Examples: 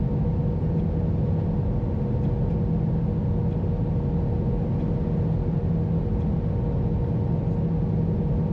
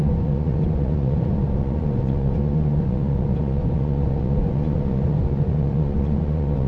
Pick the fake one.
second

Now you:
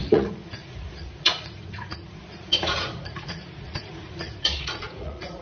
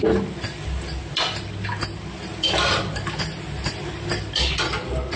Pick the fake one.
first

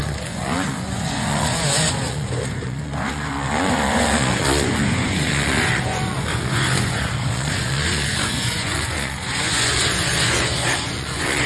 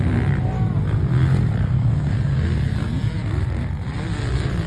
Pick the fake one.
first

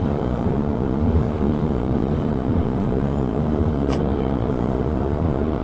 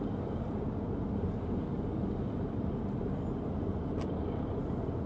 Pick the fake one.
first